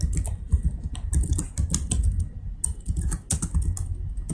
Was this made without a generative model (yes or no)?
yes